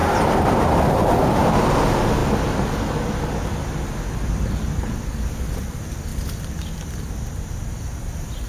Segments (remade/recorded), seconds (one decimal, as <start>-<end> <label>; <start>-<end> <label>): 0.0-8.5 recorded